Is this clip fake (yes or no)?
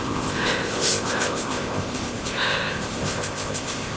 yes